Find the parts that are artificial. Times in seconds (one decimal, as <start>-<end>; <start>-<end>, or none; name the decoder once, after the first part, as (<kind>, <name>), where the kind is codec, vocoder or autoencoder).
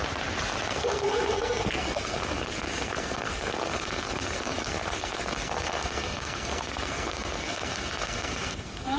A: 0.7-9.0 (codec, SNAC)